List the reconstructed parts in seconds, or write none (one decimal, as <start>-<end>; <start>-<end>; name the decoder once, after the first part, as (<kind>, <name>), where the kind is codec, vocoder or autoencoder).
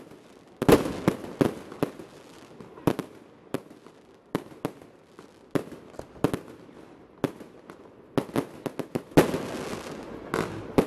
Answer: none